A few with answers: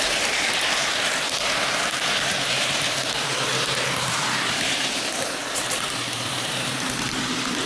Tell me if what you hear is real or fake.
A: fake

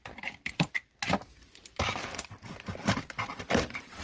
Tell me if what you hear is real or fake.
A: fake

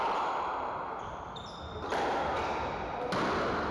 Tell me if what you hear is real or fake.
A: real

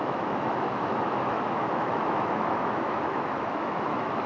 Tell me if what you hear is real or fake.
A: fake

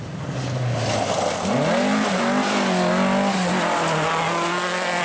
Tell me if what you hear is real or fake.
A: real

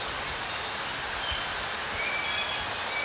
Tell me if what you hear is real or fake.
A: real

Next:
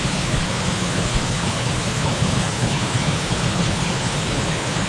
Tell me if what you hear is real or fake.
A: fake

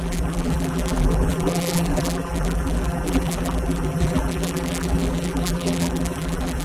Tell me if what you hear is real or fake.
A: fake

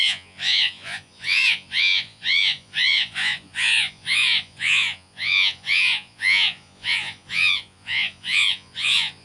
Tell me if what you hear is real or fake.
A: fake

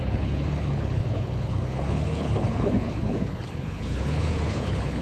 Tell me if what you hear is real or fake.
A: fake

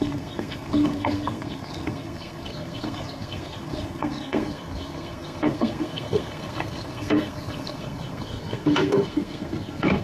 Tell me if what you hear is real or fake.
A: fake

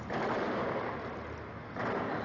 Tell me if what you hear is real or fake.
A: real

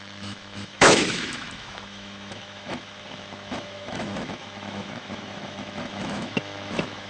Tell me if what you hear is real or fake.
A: fake